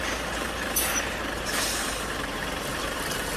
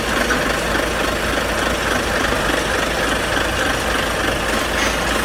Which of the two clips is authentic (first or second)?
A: second